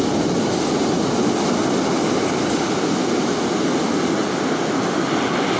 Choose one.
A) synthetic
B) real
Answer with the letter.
B